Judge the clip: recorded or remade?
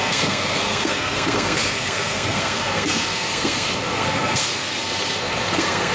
remade